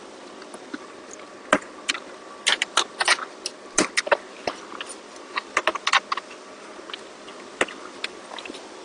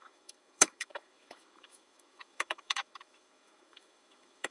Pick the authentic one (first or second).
first